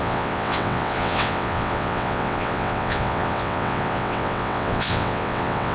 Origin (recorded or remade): remade